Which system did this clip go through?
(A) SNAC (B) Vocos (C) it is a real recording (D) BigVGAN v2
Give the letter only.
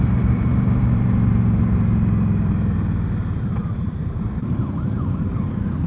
D